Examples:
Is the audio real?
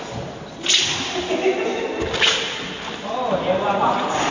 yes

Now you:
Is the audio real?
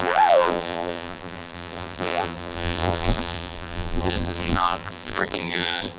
no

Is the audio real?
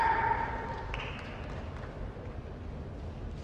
yes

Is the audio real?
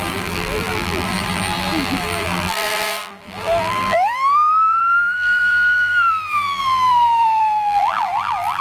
no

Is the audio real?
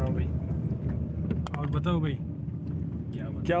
yes